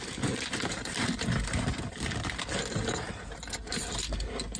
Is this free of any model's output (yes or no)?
yes